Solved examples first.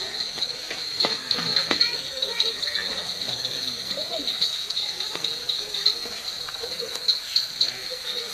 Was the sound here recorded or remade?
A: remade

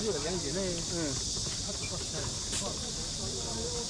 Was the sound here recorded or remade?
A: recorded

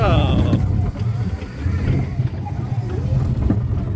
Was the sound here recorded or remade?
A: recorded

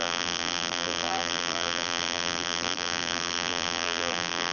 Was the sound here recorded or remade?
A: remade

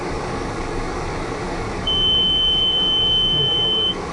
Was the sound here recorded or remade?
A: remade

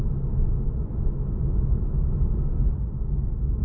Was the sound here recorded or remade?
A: recorded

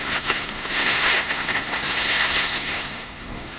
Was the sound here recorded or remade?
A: remade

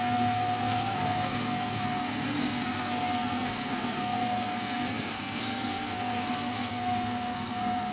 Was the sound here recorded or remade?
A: remade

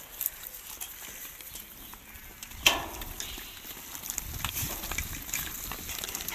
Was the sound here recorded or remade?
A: recorded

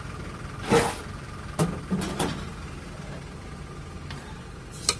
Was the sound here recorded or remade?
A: recorded